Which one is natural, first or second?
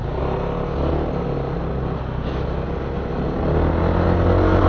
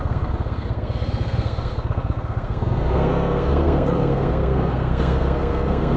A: first